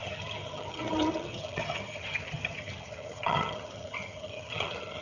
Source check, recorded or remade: remade